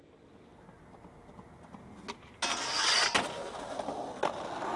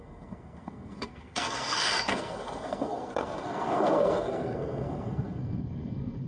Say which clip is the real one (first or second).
first